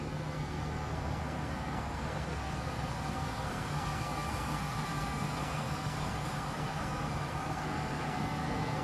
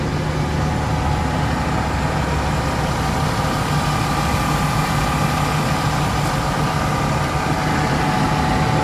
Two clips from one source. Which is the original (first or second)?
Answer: second